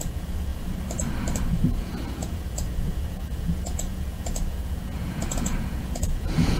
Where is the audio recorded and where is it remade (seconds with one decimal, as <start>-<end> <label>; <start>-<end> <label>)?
0.0-0.5 remade; 0.5-1.4 recorded; 1.4-6.6 remade

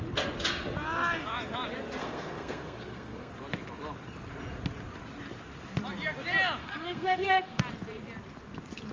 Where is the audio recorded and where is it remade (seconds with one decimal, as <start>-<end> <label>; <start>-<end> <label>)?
0.0-2.0 recorded; 2.0-3.3 remade; 3.3-6.6 recorded; 6.6-7.6 remade; 7.6-8.9 recorded

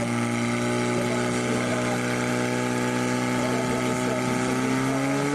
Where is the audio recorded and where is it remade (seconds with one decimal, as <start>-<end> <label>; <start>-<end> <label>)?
0.0-1.7 recorded; 1.7-2.3 remade; 2.3-5.3 recorded

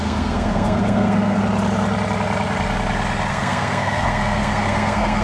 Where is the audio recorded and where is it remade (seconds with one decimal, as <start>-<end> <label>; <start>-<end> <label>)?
0.0-1.4 remade; 1.4-3.3 recorded; 3.3-5.2 remade